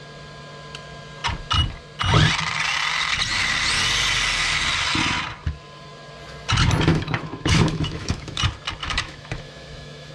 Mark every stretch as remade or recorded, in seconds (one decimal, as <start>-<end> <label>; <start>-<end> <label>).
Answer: 0.0-6.9 recorded; 6.9-8.4 remade; 8.4-8.8 recorded; 8.8-10.1 remade